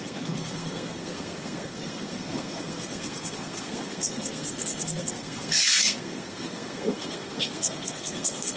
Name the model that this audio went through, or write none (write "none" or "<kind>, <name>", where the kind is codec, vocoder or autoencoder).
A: codec, SNAC